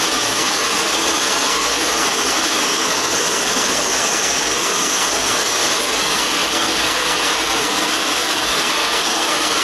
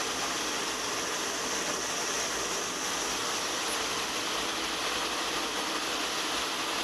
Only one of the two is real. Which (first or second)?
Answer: second